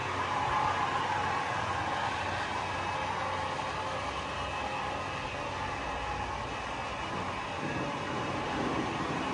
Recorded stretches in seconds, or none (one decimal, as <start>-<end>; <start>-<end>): 0.0-9.3